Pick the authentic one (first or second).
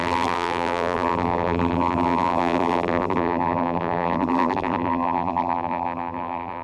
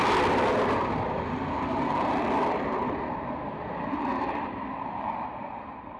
second